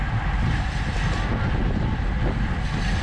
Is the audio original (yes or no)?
yes